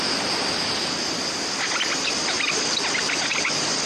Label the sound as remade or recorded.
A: remade